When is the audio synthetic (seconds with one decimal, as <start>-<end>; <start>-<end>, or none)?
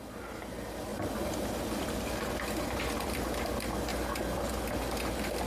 0.9-2.2